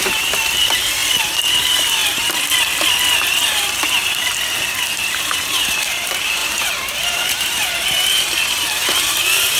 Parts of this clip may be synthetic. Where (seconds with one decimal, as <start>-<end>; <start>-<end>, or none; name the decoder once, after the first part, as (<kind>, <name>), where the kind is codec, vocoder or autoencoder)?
0.0-1.0 (vocoder, BigVGAN v2); 1.6-2.0; 4.0-9.6